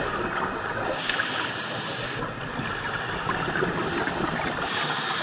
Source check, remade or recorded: recorded